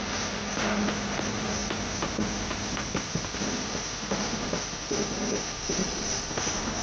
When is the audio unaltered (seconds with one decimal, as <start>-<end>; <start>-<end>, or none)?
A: 0.0-5.8; 6.3-6.8